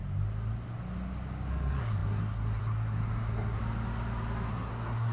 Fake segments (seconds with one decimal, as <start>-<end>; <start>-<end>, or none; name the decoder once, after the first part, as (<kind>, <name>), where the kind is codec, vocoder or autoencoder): 1.5-3.6 (codec, SNAC); 4.5-5.1